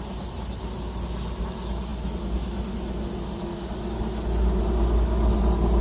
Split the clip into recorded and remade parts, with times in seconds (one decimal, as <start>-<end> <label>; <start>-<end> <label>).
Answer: 0.0-5.8 recorded